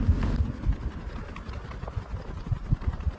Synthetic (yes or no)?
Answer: no